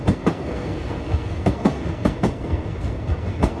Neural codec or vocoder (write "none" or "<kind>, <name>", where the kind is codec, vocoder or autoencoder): codec, SNAC